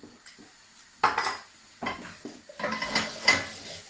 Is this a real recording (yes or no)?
yes